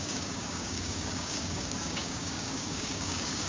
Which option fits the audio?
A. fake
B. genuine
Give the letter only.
A